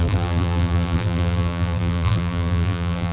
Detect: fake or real fake